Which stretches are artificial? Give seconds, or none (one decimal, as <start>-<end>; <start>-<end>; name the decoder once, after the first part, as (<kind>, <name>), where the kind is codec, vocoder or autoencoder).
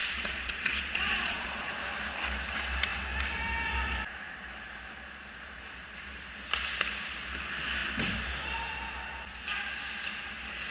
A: 0.0-1.7 (vocoder, Vocos)